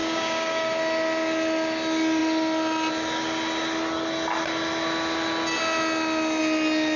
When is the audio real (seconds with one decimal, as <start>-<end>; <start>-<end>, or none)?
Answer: 0.8-7.0